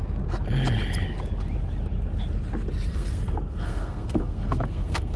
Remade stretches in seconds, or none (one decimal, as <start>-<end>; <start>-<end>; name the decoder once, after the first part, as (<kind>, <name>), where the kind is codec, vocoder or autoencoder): 2.9-5.2 (codec, SNAC)